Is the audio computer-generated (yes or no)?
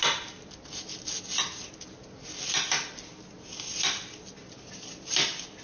no